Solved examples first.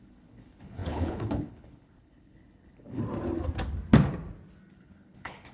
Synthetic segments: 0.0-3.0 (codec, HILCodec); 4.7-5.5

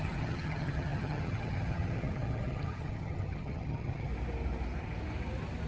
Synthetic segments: 0.0-4.1 (vocoder, HiFi-GAN)

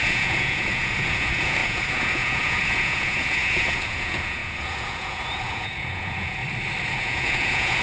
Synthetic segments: 0.0-6.4 (vocoder, Vocos); 6.9-7.8

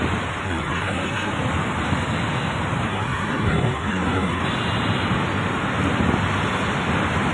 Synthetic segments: 0.4-1.3 (codec, SNAC); 2.9-4.4

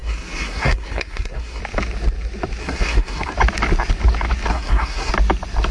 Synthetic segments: 0.0-1.6 (codec, SNAC); 2.6-3.3; 4.5-5.1

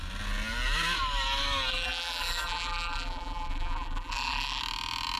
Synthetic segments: 1.7-4.6 (vocoder, BigVGAN v2)

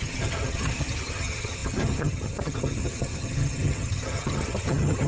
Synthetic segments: 0.0-5.1 (vocoder, HiFi-GAN)

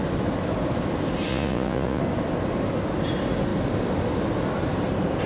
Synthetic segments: 1.3-2.0 (vocoder, Vocos)